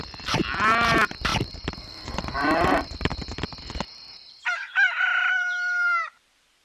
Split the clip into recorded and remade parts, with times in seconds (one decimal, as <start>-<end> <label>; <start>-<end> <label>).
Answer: 0.0-1.3 recorded; 1.3-3.1 remade; 3.1-5.1 recorded; 5.1-6.1 remade; 6.1-6.6 recorded